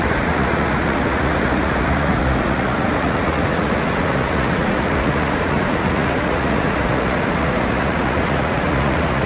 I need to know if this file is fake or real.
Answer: fake